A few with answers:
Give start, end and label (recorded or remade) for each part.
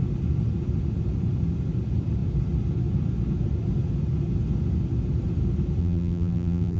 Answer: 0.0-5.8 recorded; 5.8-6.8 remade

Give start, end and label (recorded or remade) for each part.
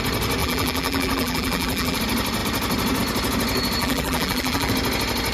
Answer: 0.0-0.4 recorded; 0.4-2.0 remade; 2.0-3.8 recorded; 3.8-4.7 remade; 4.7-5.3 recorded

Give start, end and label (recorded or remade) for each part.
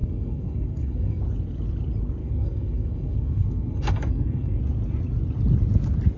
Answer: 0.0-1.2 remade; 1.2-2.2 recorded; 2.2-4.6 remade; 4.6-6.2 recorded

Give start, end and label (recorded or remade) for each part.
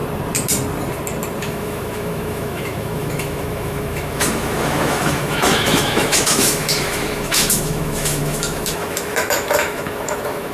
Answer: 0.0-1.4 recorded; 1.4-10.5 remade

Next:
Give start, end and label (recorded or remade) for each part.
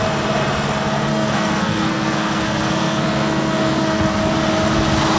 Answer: 0.0-1.1 recorded; 1.1-4.2 remade; 4.2-5.2 recorded